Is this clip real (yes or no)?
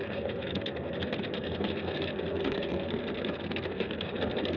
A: no